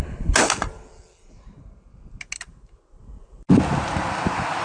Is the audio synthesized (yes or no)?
no